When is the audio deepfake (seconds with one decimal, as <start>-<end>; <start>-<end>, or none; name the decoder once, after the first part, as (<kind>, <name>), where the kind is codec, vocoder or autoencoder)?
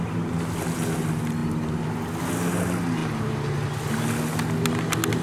none